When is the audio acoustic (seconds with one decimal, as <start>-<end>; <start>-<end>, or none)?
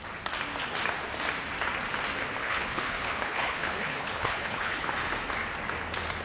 0.0-2.4; 4.9-6.2